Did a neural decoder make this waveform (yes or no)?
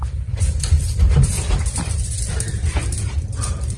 yes